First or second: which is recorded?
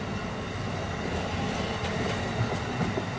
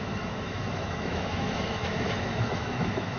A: first